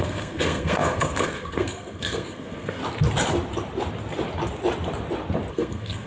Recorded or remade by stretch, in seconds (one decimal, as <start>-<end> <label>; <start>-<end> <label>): 0.0-2.8 remade; 2.8-5.5 recorded; 5.5-6.1 remade